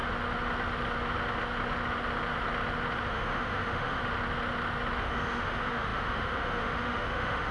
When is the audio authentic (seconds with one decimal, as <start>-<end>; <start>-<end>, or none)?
0.0-3.1; 4.0-5.0